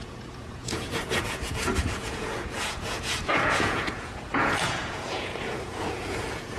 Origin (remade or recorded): remade